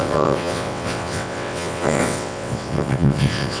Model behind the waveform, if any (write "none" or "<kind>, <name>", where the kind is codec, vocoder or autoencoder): vocoder, WaveNeXt